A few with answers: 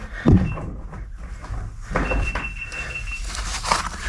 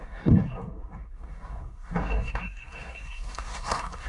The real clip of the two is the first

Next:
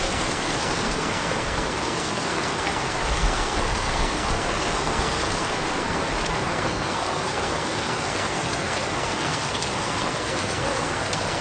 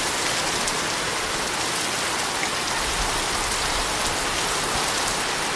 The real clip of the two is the second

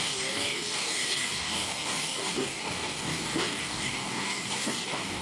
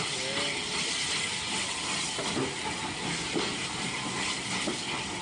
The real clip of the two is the second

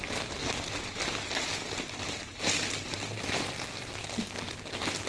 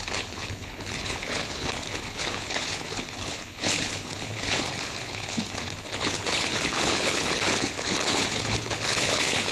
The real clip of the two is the first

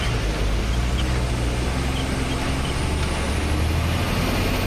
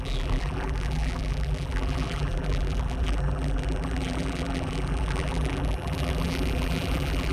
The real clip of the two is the first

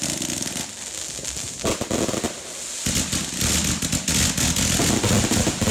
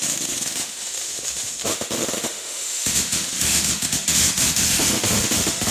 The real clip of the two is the first